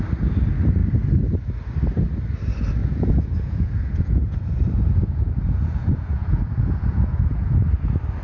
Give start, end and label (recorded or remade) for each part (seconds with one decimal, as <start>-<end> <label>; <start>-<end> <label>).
0.0-2.8 recorded; 2.8-7.7 remade; 7.7-8.2 recorded